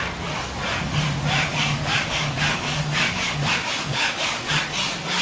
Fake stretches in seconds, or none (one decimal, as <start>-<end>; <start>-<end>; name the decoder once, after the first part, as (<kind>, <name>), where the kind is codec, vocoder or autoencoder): 1.5-4.6 (codec, DAC)